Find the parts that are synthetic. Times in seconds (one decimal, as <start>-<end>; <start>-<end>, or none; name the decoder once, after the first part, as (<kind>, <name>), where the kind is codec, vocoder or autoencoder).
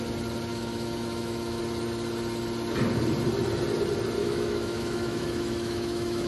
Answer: 0.5-1.6 (autoencoder, DAC-VAE); 4.2-6.3